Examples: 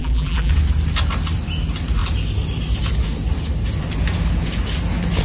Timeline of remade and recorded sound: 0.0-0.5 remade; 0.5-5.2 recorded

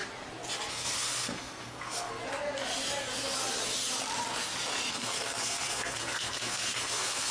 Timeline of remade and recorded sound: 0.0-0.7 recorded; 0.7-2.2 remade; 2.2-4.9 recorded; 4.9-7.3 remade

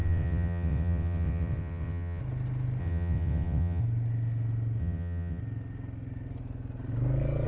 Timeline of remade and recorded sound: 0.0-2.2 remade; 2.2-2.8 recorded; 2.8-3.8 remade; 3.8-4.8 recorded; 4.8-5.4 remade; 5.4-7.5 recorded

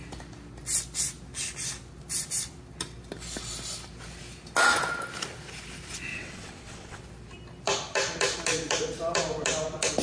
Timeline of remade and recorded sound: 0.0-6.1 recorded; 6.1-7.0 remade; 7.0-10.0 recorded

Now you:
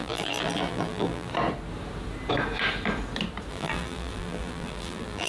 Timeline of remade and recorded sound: 0.0-1.3 remade; 1.3-3.5 recorded; 3.5-5.3 remade

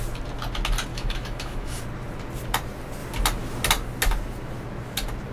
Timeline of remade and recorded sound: 0.0-0.9 recorded; 0.9-1.8 remade; 1.8-5.3 recorded